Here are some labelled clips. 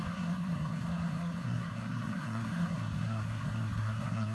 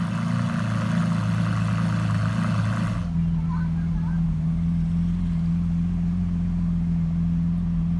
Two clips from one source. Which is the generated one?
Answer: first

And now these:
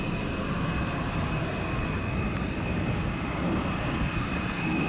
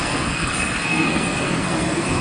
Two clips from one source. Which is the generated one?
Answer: second